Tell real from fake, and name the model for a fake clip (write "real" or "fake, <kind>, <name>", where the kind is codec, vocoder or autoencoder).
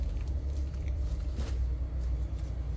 real